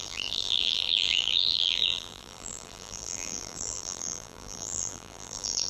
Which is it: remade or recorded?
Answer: remade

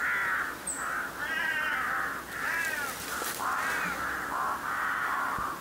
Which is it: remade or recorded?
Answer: recorded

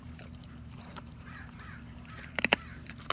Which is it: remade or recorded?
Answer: remade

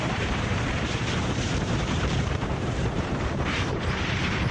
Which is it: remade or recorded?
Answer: remade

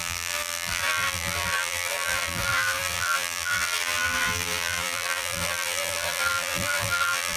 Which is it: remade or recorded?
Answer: remade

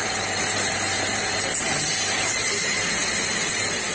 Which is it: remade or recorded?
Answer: remade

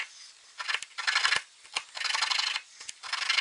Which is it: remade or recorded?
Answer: recorded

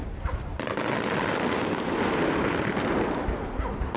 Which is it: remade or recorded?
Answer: recorded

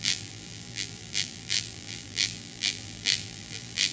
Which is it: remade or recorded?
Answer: remade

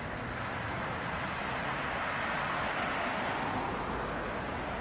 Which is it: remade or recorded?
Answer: recorded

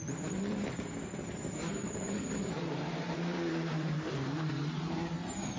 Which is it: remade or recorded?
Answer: remade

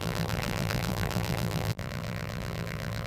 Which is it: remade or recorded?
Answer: remade